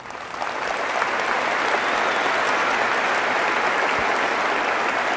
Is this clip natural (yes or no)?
yes